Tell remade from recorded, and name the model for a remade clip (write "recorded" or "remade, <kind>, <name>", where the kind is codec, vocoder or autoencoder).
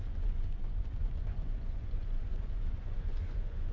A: remade, vocoder, Vocos